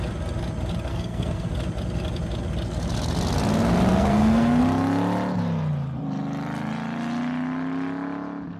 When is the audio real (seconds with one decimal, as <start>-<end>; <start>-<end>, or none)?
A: 0.0-0.9; 1.5-3.9; 4.6-8.6